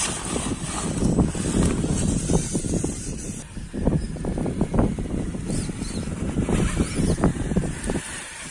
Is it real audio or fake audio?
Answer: real